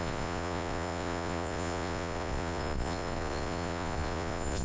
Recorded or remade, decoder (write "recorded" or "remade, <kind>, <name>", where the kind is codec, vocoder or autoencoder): remade, vocoder, Vocos